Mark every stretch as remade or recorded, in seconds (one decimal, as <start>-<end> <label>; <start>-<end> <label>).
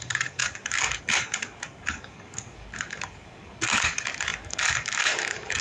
0.0-5.6 remade